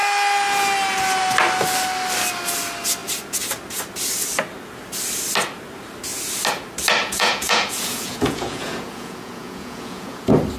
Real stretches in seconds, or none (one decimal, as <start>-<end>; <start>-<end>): 0.0-7.0; 10.2-10.6